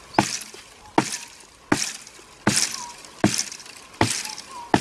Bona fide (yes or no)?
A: yes